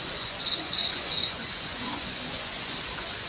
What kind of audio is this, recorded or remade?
remade